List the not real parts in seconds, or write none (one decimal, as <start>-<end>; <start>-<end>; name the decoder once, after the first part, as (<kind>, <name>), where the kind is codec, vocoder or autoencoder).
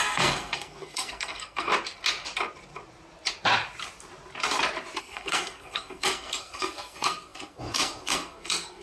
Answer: 0.0-1.7 (codec, SNAC); 5.0-8.8